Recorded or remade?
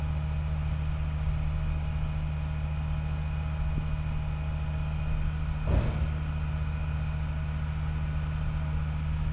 recorded